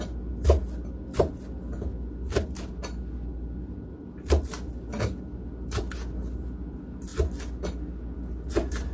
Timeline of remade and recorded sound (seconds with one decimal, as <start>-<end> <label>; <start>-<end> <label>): 0.0-8.9 recorded